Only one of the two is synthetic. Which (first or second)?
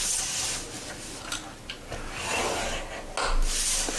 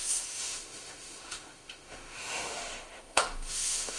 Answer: second